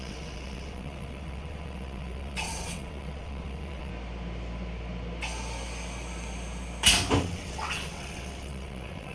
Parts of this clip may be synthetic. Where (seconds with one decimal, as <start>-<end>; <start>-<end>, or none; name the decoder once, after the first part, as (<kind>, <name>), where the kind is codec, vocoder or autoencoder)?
0.0-3.9 (vocoder, WaveNeXt); 7.2-9.1